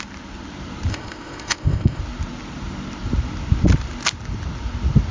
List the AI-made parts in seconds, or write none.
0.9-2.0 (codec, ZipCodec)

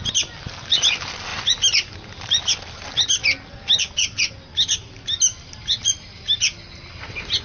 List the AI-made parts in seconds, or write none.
none

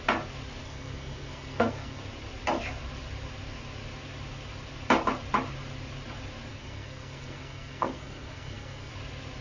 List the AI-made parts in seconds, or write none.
0.6-2.0 (codec, SNAC); 6.5-8.9